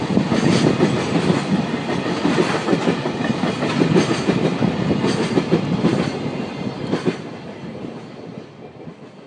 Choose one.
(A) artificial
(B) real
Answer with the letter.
B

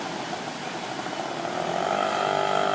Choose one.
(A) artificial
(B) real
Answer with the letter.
B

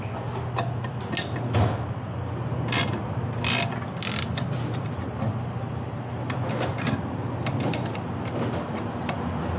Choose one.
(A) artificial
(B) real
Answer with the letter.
B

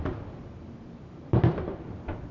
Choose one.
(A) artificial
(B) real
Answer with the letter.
A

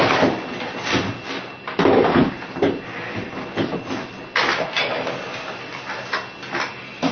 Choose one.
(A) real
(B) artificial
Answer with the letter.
B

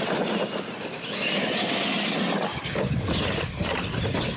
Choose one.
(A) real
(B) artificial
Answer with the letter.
A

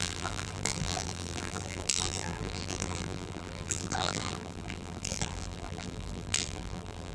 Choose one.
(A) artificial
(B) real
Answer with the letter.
A